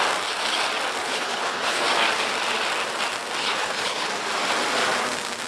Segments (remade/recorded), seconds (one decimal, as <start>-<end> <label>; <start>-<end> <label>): 0.0-1.0 recorded; 1.0-1.8 remade; 1.8-3.4 recorded; 3.4-4.1 remade; 4.1-5.5 recorded